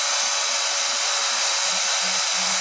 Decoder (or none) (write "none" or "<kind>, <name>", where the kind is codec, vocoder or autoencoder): none